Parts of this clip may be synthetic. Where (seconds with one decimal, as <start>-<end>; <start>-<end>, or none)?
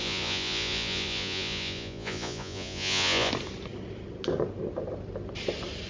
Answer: 0.0-3.3